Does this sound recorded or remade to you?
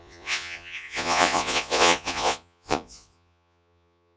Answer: remade